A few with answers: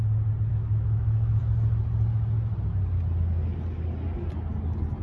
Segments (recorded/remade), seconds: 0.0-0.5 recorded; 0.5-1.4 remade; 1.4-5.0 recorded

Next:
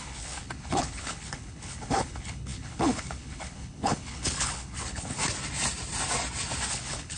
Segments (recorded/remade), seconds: 0.0-5.2 remade; 5.2-6.7 recorded; 6.7-7.2 remade